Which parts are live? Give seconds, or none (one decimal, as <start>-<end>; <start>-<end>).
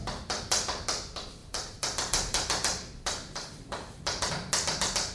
0.0-1.4; 4.3-5.1